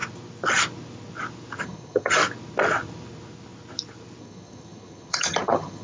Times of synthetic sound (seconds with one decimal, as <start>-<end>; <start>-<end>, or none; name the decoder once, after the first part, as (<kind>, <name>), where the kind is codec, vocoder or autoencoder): 1.6-2.2 (vocoder, HiFi-GAN); 4.2-5.8